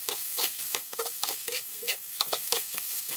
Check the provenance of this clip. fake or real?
fake